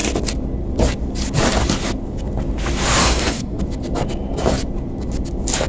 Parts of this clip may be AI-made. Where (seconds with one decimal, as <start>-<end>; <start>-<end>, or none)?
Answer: 3.0-3.6